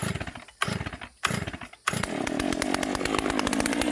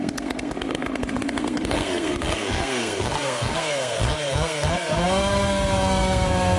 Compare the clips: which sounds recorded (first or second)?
first